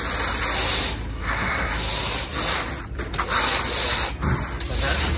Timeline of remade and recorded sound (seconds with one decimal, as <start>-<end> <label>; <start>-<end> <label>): 0.0-1.1 recorded; 1.1-1.7 remade; 1.7-5.2 recorded